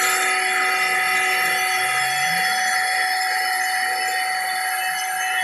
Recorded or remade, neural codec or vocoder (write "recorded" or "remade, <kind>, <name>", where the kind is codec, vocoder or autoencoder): recorded